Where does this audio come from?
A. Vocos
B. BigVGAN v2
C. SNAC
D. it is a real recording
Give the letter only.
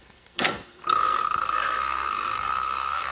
C